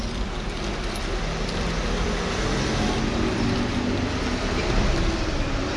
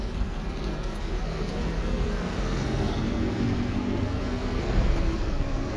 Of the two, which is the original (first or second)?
first